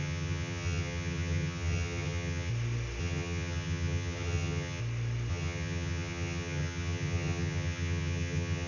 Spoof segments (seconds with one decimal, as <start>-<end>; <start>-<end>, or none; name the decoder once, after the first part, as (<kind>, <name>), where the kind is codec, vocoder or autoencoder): 0.0-2.5 (vocoder, HiFi-GAN); 3.0-4.8; 5.3-8.7